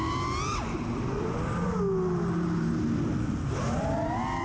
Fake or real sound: real